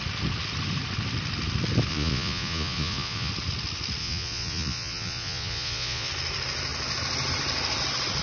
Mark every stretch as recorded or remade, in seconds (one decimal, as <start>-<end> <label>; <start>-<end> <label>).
0.0-1.9 recorded; 1.9-3.3 remade; 3.3-4.0 recorded; 4.0-6.1 remade; 6.1-8.2 recorded